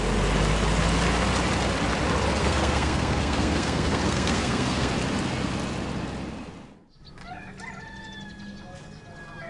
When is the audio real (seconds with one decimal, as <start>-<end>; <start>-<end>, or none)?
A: 0.0-2.4; 4.9-9.5